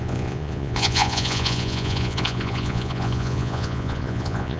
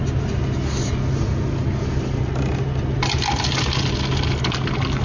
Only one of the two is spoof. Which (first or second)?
first